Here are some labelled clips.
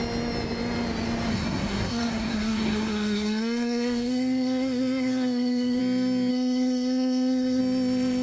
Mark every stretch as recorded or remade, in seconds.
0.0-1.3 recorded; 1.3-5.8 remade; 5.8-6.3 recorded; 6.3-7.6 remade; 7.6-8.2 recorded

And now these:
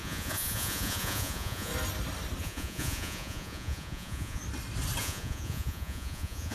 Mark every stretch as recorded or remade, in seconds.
0.0-1.7 remade; 1.7-2.4 recorded; 2.4-4.4 remade; 4.4-5.0 recorded; 5.0-6.5 remade

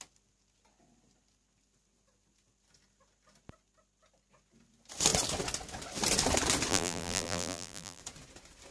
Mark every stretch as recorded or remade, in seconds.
0.0-6.7 recorded; 6.7-8.0 remade; 8.0-8.7 recorded